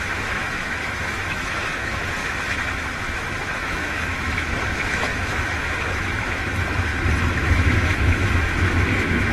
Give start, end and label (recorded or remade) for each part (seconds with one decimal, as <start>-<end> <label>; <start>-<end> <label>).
0.0-6.9 remade; 6.9-7.4 recorded; 7.4-9.3 remade